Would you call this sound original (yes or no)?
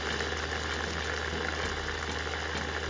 yes